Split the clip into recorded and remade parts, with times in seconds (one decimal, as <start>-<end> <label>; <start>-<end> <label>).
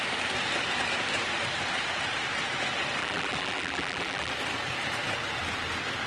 0.0-3.0 recorded; 3.0-4.3 remade; 4.3-6.1 recorded